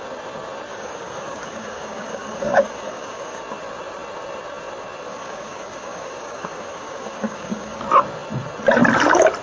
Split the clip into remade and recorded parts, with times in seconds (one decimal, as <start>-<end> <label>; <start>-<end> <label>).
0.0-0.7 recorded; 0.7-3.4 remade; 3.4-5.1 recorded; 5.1-7.8 remade; 7.8-9.4 recorded